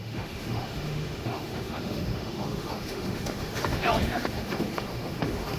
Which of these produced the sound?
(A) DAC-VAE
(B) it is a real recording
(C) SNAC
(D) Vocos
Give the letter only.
A